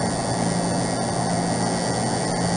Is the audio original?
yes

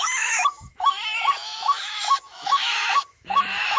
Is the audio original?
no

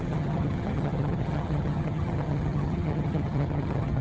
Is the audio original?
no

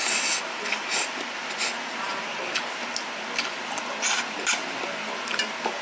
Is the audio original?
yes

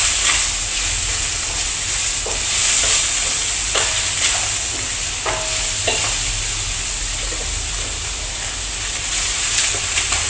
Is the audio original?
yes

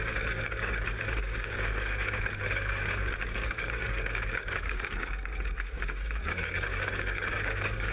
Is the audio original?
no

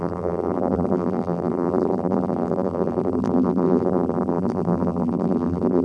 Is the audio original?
no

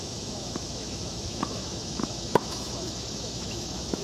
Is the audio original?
no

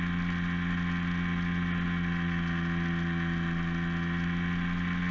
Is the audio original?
yes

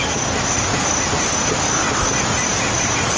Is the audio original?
yes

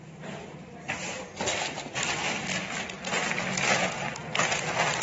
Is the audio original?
no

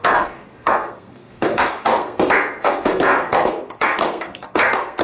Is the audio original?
no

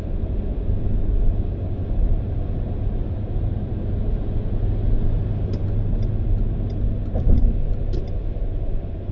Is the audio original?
yes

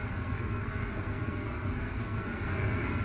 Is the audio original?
no